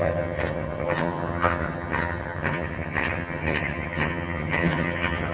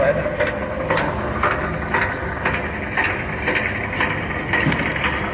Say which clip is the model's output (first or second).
first